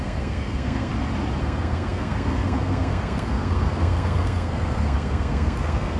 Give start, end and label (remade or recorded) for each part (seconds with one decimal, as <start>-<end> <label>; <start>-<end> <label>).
0.0-0.9 remade; 0.9-1.4 recorded; 1.4-6.0 remade